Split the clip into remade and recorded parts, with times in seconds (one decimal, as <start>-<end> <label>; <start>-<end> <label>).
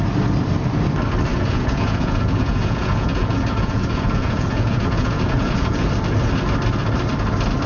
0.0-1.3 recorded; 1.3-5.9 remade; 5.9-7.7 recorded